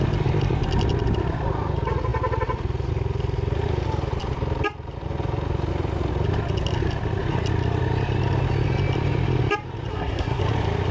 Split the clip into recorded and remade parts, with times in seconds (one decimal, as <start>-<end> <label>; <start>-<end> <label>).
0.0-9.9 recorded; 9.9-10.4 remade; 10.4-10.9 recorded